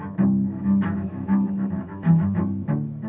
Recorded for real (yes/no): no